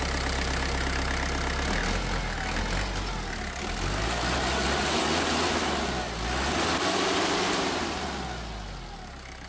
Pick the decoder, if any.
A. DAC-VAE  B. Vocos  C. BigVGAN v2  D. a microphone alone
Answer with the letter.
D